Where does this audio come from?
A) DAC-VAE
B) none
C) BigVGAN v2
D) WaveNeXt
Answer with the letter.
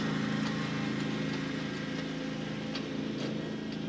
B